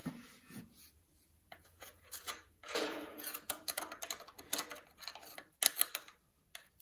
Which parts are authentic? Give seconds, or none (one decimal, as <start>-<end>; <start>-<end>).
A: 3.8-6.8